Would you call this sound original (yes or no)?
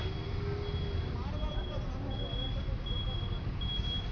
yes